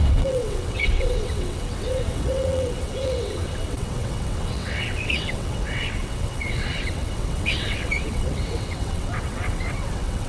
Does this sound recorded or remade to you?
remade